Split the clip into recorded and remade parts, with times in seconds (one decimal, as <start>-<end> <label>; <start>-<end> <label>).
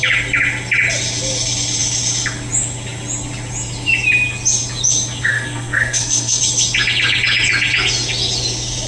0.0-5.3 recorded; 5.3-6.4 remade; 6.4-8.9 recorded